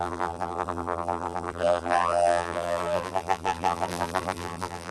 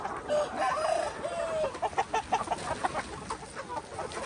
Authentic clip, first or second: second